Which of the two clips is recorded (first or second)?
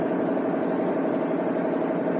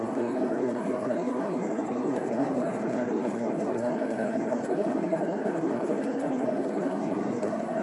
first